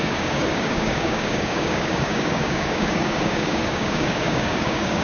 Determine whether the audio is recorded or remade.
remade